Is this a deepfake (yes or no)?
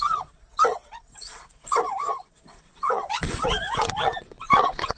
yes